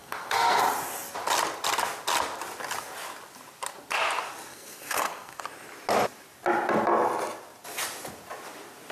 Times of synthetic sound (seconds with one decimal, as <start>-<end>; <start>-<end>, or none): 0.0-0.6; 4.5-5.4